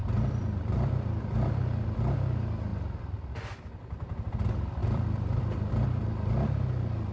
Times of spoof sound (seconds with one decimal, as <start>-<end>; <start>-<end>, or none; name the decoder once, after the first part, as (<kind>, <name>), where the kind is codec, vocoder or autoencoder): 0.0-2.0 (vocoder, BigVGAN v2); 2.7-3.3; 4.8-5.4